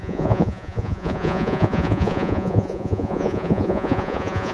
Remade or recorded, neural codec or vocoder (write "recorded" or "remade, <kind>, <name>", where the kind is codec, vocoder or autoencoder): remade, vocoder, Vocos